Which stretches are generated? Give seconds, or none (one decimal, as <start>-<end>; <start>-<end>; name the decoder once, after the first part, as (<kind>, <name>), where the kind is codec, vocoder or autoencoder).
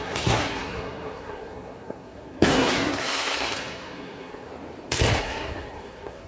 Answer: 0.0-4.5 (codec, SNAC); 5.2-6.3